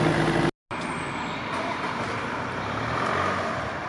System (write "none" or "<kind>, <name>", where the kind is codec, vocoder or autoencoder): none